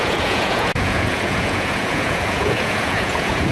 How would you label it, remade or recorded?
remade